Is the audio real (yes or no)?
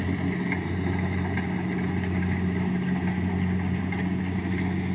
yes